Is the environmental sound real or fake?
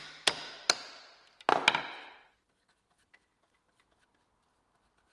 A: real